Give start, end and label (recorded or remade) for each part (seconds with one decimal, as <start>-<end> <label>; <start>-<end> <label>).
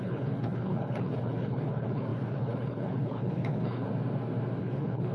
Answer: 0.0-3.9 remade; 3.9-4.6 recorded; 4.6-5.1 remade